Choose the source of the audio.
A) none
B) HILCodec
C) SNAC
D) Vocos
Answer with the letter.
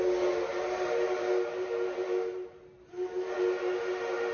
A